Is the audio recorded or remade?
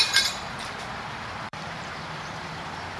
remade